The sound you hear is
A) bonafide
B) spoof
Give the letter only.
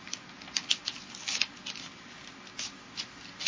A